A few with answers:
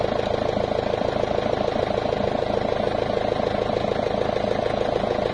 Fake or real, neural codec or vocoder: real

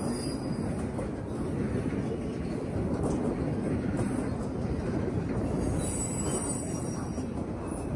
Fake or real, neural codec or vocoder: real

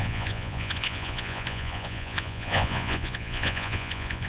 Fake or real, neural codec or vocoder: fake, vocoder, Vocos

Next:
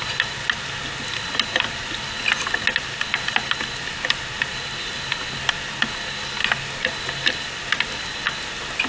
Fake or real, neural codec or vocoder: real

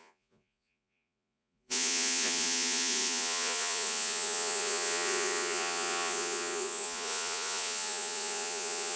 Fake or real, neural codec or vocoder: fake, vocoder, Vocos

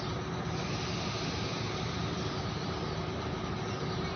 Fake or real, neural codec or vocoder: real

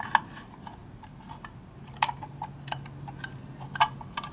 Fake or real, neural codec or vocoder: real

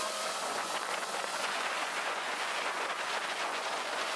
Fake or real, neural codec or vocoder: fake, vocoder, Vocos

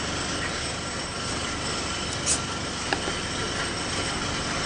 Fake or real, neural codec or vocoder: real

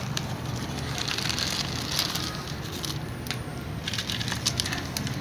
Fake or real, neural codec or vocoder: real